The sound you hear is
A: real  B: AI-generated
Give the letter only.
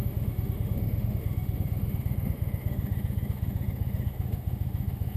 B